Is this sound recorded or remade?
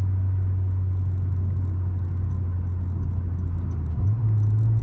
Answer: recorded